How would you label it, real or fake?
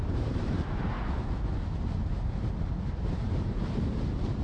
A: fake